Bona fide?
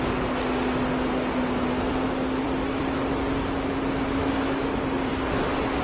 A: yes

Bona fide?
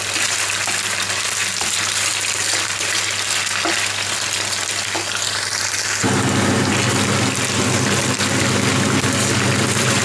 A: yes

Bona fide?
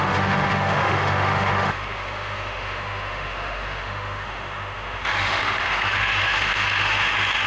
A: no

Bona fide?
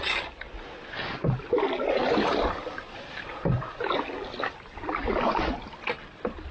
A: yes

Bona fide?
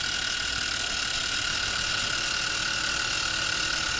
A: yes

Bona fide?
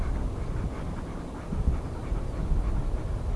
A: yes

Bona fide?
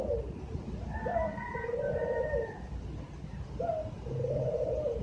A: yes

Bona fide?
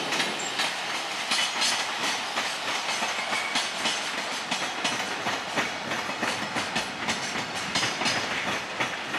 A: yes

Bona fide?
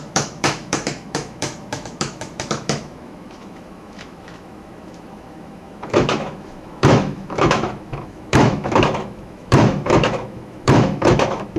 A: no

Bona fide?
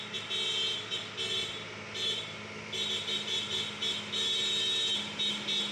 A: yes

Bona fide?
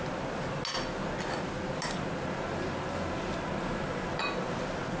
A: yes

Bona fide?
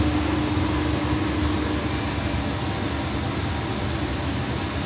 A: yes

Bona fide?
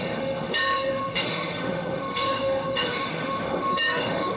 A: no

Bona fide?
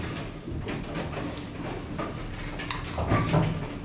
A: yes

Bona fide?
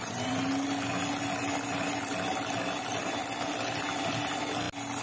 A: yes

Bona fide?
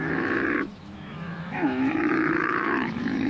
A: no